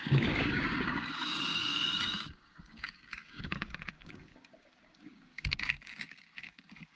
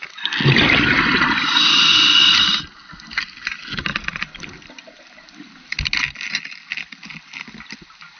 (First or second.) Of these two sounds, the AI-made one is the first